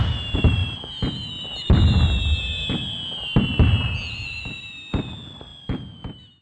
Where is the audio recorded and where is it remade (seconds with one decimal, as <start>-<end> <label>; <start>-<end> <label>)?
0.0-0.6 recorded; 0.6-4.4 remade; 4.4-5.5 recorded; 5.5-6.4 remade